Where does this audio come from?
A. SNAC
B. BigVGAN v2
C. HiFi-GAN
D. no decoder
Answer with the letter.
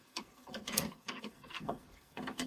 A